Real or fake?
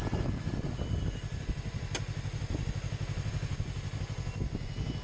real